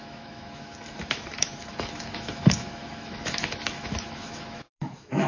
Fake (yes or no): yes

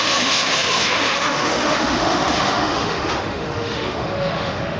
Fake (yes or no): yes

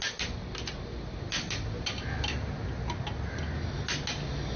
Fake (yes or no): no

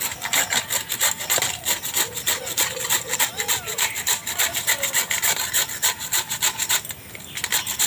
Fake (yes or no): no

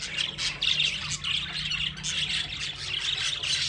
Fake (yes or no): no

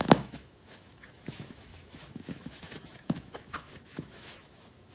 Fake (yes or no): yes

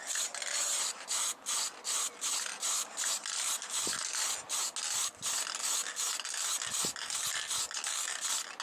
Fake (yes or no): no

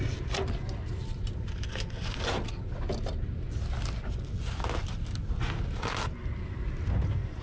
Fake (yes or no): no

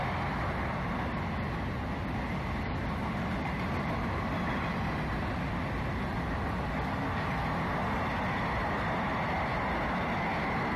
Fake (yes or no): no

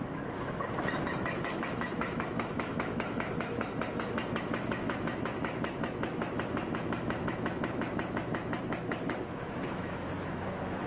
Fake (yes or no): yes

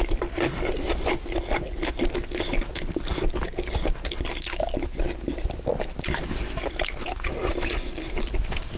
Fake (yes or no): no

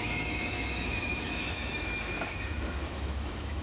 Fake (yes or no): yes